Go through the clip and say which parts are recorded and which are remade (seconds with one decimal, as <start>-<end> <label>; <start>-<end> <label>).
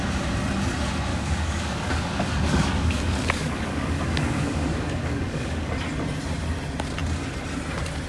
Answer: 0.0-1.1 recorded; 1.1-5.7 remade; 5.7-8.1 recorded